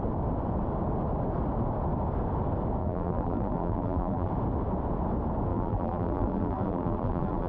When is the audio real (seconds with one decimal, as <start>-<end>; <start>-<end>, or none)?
0.0-2.8; 4.3-5.5

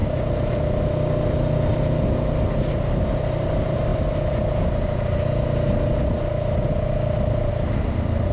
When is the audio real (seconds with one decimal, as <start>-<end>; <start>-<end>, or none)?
0.6-8.3

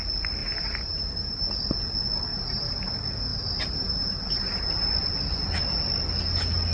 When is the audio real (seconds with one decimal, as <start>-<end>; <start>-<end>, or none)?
0.0-0.4; 1.5-2.3; 2.9-3.3; 4.6-6.7

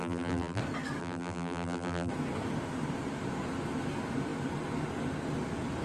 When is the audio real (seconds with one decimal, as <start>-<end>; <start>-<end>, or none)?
0.6-1.0; 2.1-5.8

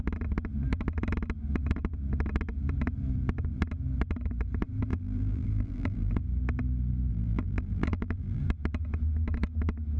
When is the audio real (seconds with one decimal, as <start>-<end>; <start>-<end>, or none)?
0.0-4.9; 6.2-7.1; 8.4-10.0